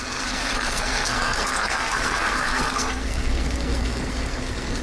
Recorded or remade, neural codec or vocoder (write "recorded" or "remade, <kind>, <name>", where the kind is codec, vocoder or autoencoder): remade, codec, SNAC